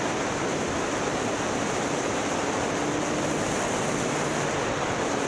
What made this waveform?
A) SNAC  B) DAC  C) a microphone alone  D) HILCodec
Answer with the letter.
C